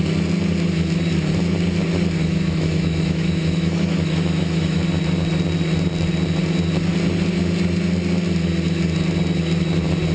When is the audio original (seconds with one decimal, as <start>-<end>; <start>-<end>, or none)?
0.0-2.2; 4.8-10.1